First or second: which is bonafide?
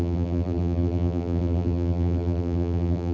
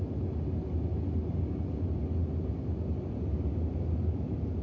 second